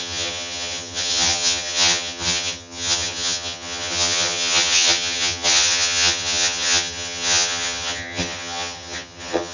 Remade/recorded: remade